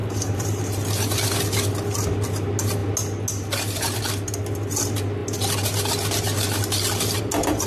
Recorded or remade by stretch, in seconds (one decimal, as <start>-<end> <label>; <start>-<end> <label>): 0.0-0.6 remade; 0.6-7.7 recorded